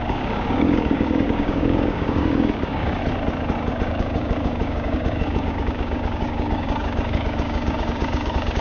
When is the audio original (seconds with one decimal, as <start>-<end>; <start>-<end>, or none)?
3.0-3.7